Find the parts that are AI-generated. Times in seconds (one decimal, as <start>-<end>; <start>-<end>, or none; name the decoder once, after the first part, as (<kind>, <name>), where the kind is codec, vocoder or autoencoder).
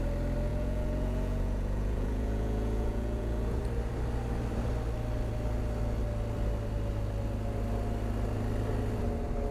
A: 0.5-3.6 (vocoder, Vocos)